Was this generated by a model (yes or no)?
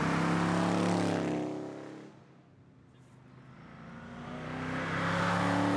no